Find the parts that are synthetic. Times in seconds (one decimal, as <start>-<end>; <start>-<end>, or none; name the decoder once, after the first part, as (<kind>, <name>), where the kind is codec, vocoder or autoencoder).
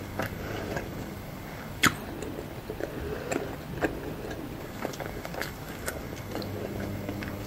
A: 0.0-1.8 (codec, DAC); 4.6-7.5